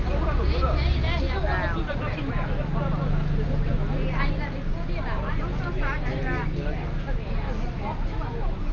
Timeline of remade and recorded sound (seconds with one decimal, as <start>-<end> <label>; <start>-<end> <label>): 0.0-8.7 recorded